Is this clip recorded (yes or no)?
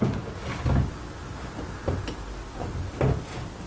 yes